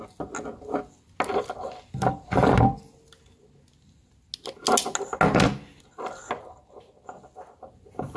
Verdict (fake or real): real